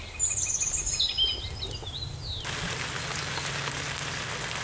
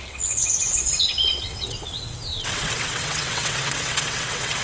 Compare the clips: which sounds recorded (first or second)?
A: first